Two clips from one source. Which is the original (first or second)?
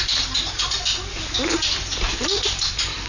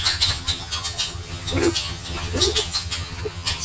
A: first